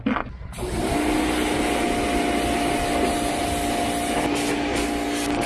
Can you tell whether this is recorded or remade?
recorded